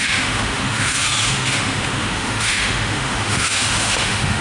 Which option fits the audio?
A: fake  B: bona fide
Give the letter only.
A